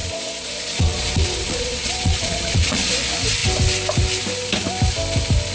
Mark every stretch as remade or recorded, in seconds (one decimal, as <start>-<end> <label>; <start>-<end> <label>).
0.0-2.9 remade; 2.9-5.5 recorded